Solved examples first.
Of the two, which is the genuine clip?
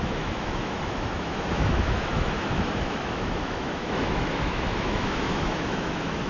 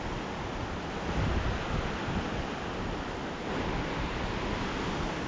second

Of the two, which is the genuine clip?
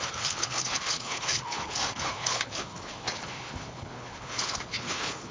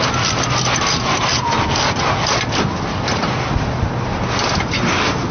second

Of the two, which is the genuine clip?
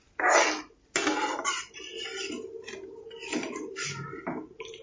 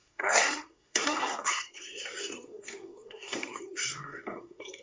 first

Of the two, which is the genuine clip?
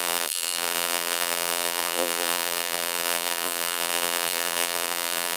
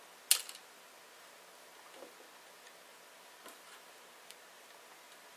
second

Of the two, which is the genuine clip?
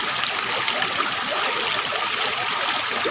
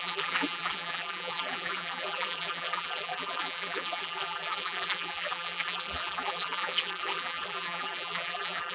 first